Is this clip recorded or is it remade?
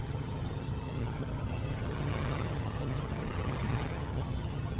remade